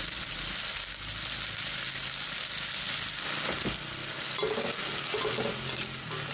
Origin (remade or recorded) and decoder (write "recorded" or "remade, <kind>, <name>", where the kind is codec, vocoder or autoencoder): recorded